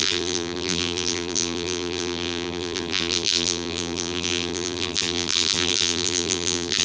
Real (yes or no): no